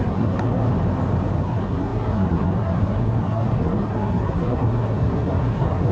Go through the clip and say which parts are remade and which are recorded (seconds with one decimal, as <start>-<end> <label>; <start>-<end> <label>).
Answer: 0.0-0.7 remade; 0.7-1.4 recorded; 1.4-5.9 remade